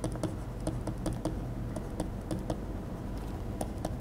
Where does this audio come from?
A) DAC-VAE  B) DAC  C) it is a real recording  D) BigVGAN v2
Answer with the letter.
C